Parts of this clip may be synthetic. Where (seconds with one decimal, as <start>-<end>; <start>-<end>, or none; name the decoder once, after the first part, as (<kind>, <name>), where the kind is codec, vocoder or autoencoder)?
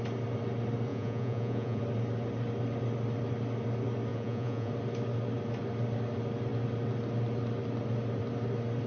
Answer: 0.9-1.8 (vocoder, Vocos); 4.1-4.7